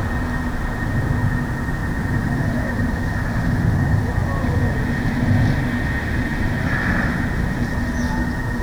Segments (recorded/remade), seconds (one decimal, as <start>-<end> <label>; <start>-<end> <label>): 0.0-1.8 recorded; 1.8-2.7 remade; 2.7-8.6 recorded